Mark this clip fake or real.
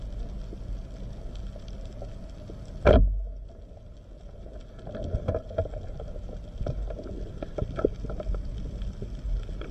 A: real